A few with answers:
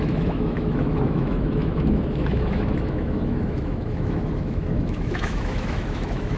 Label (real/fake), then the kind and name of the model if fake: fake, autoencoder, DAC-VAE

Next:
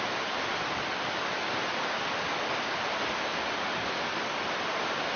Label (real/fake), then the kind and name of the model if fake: fake, vocoder, BigVGAN v2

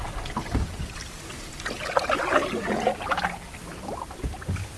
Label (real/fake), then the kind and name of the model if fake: real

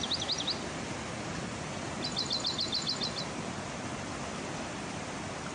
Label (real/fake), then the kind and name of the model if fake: real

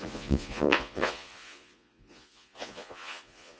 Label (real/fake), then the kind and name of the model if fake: fake, vocoder, Vocos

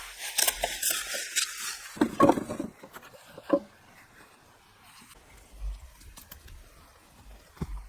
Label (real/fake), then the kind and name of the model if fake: real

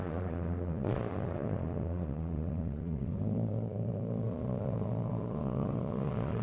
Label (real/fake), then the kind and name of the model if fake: fake, vocoder, Vocos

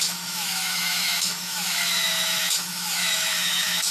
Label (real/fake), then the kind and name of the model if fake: fake, autoencoder, DAC-VAE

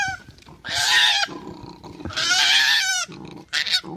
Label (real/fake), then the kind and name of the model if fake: fake, vocoder, BigVGAN v2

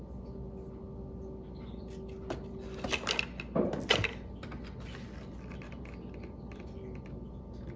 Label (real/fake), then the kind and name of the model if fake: real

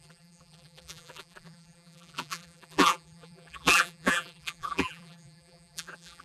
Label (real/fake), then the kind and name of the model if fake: fake, vocoder, BigVGAN v2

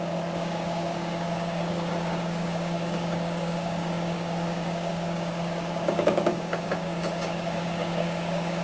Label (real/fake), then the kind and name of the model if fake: fake, codec, DAC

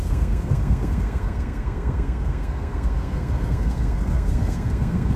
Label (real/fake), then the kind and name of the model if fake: fake, codec, SNAC